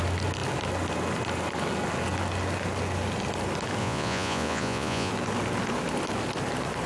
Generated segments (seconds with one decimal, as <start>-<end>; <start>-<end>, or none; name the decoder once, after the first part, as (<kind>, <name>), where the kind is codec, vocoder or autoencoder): 3.8-5.1 (vocoder, Vocos)